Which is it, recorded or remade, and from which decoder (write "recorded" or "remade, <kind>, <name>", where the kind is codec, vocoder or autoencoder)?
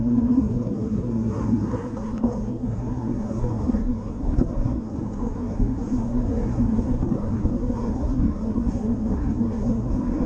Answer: remade, codec, SNAC